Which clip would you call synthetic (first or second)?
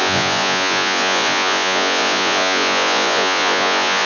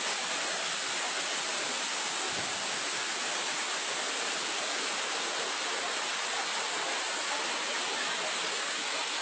first